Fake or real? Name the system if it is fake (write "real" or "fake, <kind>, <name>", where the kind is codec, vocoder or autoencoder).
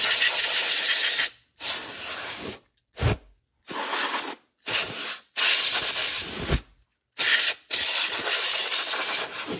real